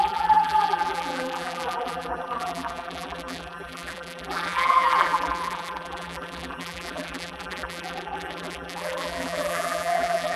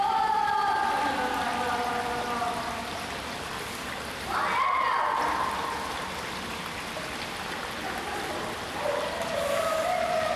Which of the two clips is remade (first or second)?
first